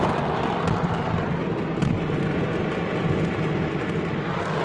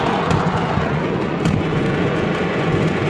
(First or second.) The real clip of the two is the first